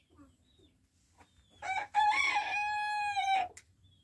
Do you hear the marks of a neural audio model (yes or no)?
no